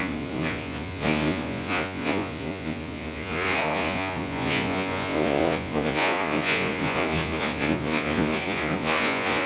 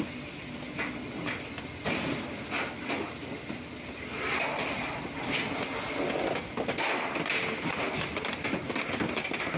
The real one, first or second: second